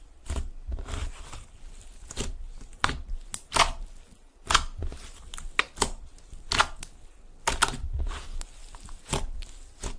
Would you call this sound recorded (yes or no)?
yes